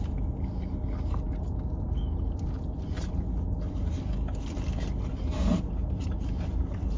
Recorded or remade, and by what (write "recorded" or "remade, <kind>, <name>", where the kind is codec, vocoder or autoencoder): recorded